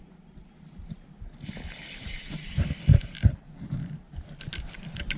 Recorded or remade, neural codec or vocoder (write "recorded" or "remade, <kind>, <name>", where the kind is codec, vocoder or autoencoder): recorded